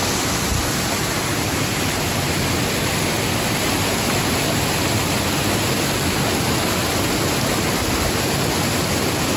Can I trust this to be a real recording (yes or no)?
yes